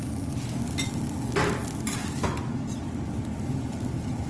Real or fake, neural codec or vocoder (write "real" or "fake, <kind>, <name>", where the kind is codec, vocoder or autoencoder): real